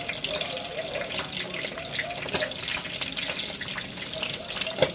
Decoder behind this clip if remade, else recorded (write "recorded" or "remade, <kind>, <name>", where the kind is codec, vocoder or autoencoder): recorded